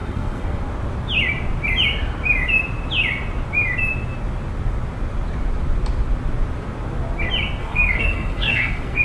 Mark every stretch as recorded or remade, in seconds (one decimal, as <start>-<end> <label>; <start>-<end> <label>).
0.0-0.6 remade; 0.6-7.6 recorded; 7.6-9.0 remade